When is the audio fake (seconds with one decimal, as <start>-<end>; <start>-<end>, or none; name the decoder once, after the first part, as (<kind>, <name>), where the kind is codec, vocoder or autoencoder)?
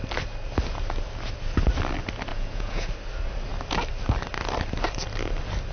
2.3-2.9 (vocoder, Vocos)